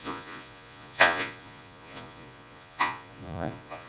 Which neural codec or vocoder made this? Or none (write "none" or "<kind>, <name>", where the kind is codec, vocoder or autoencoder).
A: vocoder, Vocos